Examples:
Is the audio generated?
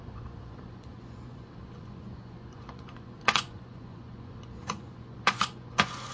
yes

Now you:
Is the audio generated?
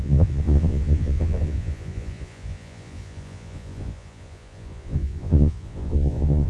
yes